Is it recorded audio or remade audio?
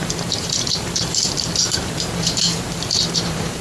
remade